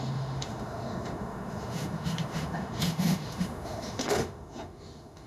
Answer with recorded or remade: remade